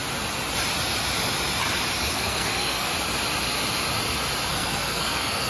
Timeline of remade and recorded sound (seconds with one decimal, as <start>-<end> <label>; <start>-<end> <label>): 0.0-2.1 recorded; 2.1-2.9 remade; 2.9-4.5 recorded; 4.5-5.5 remade